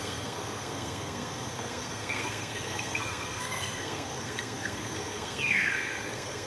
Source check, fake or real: fake